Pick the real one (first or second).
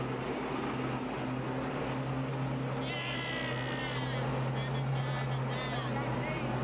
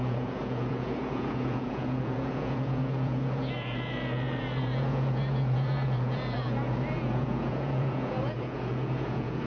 first